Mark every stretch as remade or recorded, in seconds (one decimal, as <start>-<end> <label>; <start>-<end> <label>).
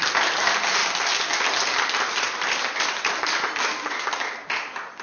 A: 0.0-5.0 recorded